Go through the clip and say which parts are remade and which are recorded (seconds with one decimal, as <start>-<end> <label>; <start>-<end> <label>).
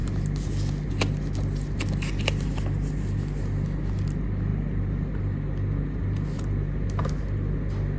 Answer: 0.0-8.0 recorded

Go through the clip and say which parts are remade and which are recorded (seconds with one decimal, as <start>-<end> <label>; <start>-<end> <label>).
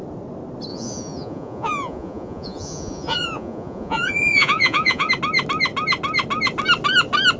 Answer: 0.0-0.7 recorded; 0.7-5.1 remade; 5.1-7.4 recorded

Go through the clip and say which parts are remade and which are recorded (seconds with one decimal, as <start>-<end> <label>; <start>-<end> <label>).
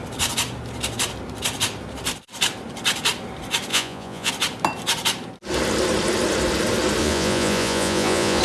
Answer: 0.0-3.7 recorded; 3.7-4.3 remade; 4.3-7.0 recorded; 7.0-8.4 remade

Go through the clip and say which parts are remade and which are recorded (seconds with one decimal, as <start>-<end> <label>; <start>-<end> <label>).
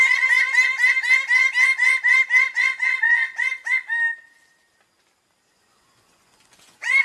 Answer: 0.0-0.5 remade; 0.5-2.5 recorded; 2.5-3.6 remade; 3.6-5.5 recorded; 5.5-7.0 remade